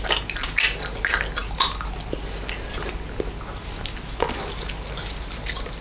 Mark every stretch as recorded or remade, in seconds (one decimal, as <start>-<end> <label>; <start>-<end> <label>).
0.0-5.8 recorded